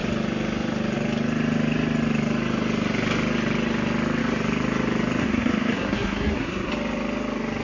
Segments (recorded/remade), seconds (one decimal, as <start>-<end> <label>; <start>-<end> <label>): 0.0-5.2 recorded; 5.2-6.7 remade; 6.7-7.6 recorded